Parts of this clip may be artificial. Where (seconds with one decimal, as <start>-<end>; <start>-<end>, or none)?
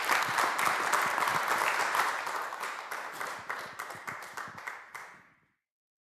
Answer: 1.3-4.9